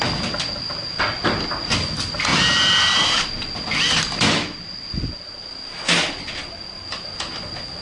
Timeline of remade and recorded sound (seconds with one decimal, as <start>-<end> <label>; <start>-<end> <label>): 0.0-7.8 recorded

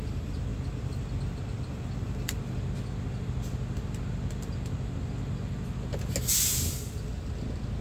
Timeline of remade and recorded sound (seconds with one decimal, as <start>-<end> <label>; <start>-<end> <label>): 0.0-7.8 recorded

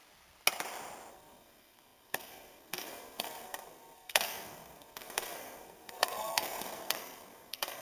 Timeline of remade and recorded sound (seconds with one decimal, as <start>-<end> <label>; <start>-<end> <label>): 0.0-1.1 recorded; 1.1-7.8 remade

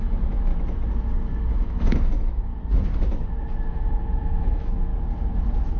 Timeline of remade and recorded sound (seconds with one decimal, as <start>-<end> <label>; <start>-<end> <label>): 0.0-0.5 remade; 0.5-1.5 recorded; 1.5-2.5 remade; 2.5-3.7 recorded; 3.7-4.9 remade; 4.9-5.8 recorded

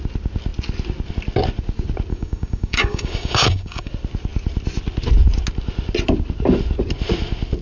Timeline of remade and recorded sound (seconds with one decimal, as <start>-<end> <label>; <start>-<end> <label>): 0.0-2.1 recorded; 2.1-3.9 remade; 3.9-7.6 recorded

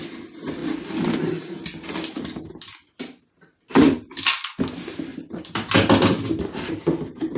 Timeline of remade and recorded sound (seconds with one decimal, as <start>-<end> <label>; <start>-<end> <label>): 0.0-7.4 recorded